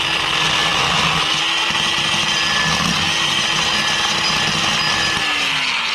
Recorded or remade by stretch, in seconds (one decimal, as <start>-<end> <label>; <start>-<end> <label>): 0.0-5.9 recorded